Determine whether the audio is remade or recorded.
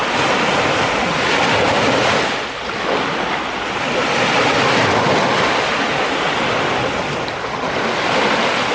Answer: recorded